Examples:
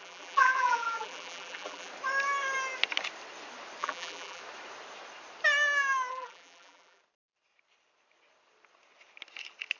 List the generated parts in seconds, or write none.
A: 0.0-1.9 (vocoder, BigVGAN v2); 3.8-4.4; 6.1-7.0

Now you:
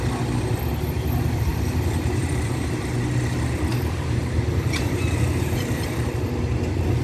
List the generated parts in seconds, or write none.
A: 1.5-2.8 (vocoder, BigVGAN v2); 3.7-5.9

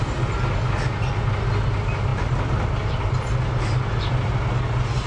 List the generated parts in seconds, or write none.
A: none